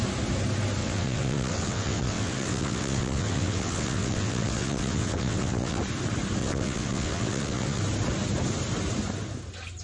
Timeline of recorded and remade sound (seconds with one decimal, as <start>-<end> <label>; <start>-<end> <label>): 0.0-0.8 recorded; 0.8-5.8 remade; 5.8-6.4 recorded; 6.4-7.8 remade; 7.8-9.8 recorded